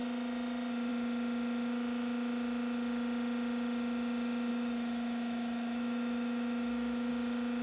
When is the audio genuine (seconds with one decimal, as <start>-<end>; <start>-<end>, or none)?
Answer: 0.0-4.5; 7.1-7.6

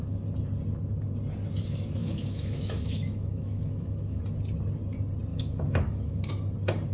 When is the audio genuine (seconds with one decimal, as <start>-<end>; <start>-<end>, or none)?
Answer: 0.0-2.0; 4.2-5.3; 6.2-6.9

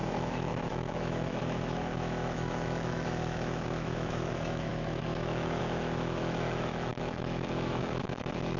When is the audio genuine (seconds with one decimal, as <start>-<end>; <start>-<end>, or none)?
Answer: none

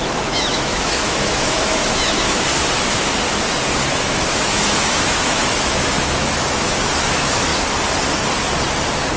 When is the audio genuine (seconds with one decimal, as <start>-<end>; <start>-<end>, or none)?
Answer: 2.5-3.9; 7.5-9.2

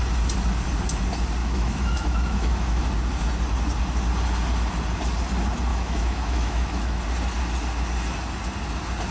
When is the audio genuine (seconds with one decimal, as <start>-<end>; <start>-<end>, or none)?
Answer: 0.0-1.4; 2.8-5.7; 7.0-9.1